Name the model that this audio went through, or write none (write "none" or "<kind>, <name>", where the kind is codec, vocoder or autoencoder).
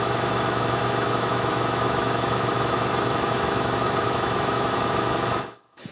autoencoder, DAC-VAE